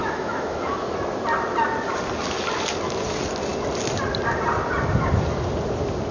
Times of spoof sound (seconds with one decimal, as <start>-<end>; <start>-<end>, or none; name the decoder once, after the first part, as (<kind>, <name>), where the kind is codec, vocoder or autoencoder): 0.0-0.9 (autoencoder, DAC-VAE)